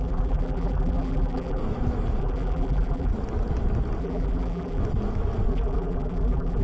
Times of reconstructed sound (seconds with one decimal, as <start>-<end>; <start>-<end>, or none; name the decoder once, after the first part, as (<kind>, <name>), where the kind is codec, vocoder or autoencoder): 0.0-1.6 (vocoder, BigVGAN v2); 2.2-3.1; 4.0-4.8; 5.5-6.6